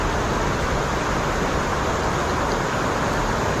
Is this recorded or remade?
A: recorded